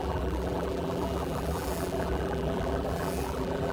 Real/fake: fake